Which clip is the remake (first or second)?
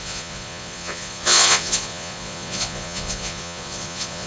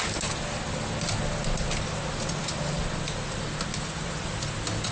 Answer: first